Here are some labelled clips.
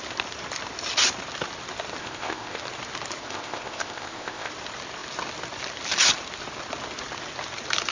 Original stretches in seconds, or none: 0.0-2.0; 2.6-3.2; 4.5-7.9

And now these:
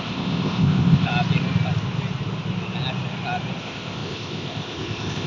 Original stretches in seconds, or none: 1.1-3.6

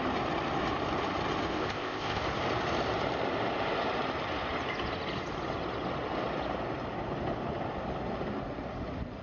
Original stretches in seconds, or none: 0.0-1.6; 2.2-9.2